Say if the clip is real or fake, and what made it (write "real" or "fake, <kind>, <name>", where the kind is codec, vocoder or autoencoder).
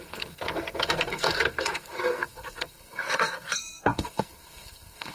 fake, codec, SNAC